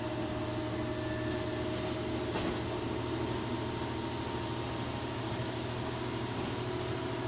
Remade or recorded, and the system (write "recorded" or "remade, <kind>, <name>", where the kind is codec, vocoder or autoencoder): recorded